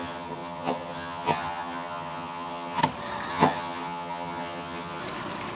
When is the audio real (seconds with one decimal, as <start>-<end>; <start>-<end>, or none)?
2.8-3.3; 5.0-5.6